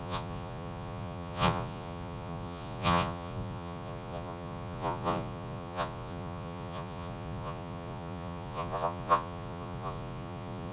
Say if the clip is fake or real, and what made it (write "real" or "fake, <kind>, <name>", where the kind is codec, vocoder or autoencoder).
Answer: fake, vocoder, Vocos